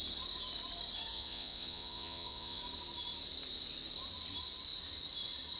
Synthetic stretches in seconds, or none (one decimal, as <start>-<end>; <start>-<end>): 1.1-2.6